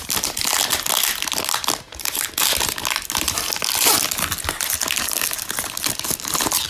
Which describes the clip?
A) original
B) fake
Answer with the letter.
A